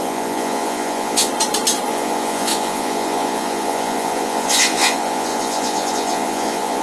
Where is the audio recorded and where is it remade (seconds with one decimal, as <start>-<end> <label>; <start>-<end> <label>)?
0.0-1.3 remade; 1.3-1.9 recorded; 1.9-6.8 remade